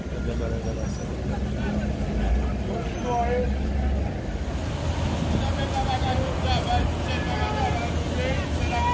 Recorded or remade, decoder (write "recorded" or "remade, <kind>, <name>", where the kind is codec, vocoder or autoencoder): recorded